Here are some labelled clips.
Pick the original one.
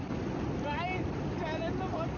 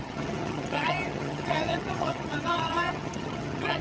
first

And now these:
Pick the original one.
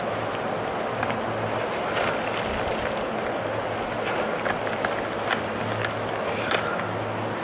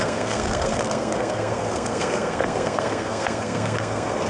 first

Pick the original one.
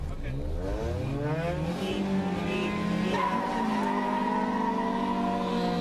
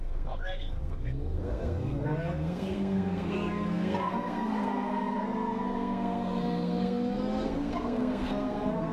first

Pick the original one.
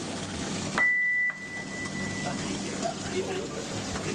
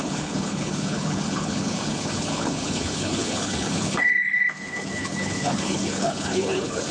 first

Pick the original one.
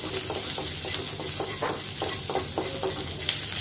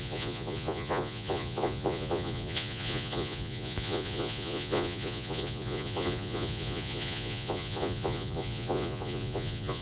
first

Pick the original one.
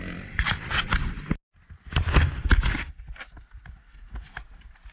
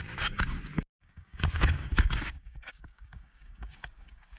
first